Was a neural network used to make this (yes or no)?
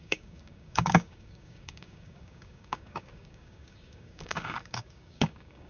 yes